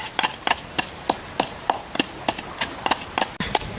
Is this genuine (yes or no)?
yes